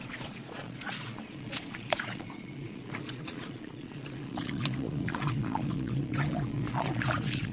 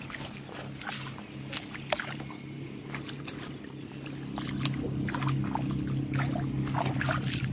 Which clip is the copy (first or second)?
first